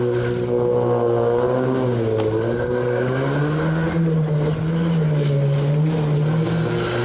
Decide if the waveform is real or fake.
real